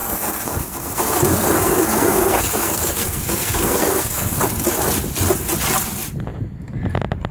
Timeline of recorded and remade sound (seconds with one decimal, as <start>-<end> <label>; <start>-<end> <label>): 0.0-4.4 remade; 4.4-7.3 recorded

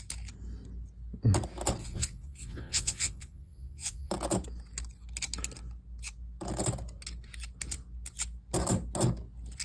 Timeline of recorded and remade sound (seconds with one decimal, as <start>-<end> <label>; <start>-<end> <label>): 0.0-1.8 recorded; 1.8-4.1 remade; 4.1-9.6 recorded

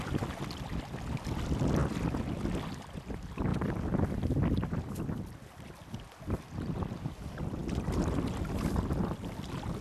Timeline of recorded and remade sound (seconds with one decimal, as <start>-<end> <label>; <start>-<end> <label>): 0.0-9.8 recorded

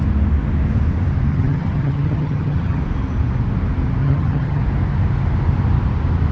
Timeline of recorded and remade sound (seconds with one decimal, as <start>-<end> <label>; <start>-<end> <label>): 0.0-1.3 recorded; 1.3-2.8 remade; 2.8-4.0 recorded; 4.0-4.6 remade; 4.6-6.3 recorded

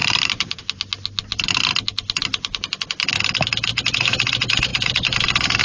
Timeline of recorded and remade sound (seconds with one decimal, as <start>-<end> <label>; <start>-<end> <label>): 0.0-0.6 remade; 0.6-4.7 recorded; 4.7-5.6 remade

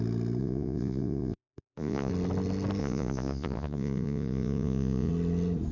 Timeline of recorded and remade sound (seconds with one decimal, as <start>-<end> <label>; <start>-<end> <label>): 0.0-0.4 recorded; 0.4-2.1 remade; 2.1-2.8 recorded; 2.8-5.1 remade; 5.1-5.7 recorded

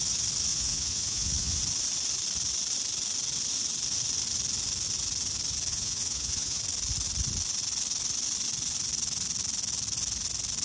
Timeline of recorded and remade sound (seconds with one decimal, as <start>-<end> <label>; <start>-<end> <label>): 0.0-0.5 recorded; 0.5-1.6 remade; 1.6-5.7 recorded; 5.7-6.6 remade; 6.6-10.6 recorded